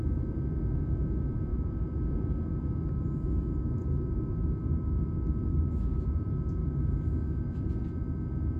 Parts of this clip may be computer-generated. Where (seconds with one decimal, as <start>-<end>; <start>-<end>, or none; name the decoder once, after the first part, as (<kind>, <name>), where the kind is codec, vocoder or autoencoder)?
1.5-2.0 (autoencoder, DAC-VAE); 5.5-6.1; 6.6-7.7